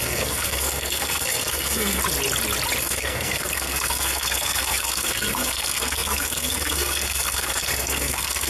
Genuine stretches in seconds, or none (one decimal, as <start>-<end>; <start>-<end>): 2.0-2.8